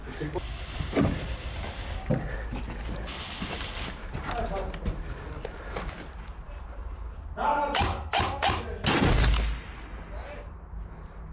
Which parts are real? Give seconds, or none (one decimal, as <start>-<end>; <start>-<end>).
0.0-11.3